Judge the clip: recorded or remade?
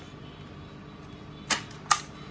recorded